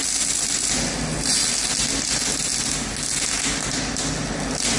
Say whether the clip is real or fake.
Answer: real